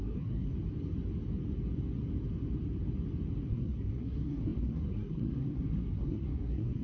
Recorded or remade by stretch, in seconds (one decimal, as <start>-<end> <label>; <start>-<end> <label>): 0.0-0.5 remade; 0.5-3.5 recorded; 3.5-6.8 remade